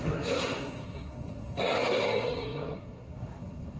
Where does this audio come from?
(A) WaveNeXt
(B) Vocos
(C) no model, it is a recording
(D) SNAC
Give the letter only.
D